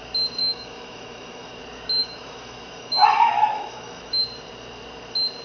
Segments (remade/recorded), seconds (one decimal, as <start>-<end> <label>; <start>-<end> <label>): 0.0-0.4 recorded; 0.4-1.6 remade; 1.6-2.0 recorded; 2.0-4.2 remade; 4.2-5.4 recorded